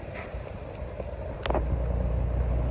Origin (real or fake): real